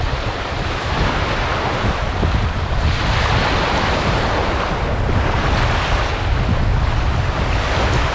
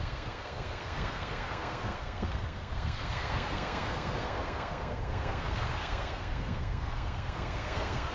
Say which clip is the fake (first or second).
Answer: second